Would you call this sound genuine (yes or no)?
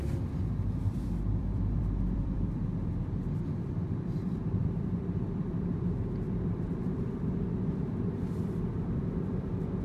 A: no